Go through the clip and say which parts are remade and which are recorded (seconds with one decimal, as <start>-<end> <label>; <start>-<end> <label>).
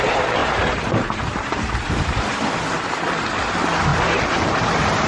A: 0.0-0.4 recorded; 0.4-1.5 remade; 1.5-5.1 recorded